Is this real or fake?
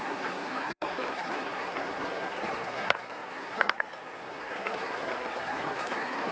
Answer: fake